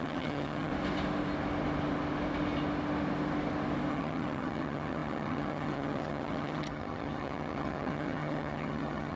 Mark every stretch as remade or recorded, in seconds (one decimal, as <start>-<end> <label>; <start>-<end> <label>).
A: 0.0-0.7 remade; 0.7-3.9 recorded; 3.9-9.2 remade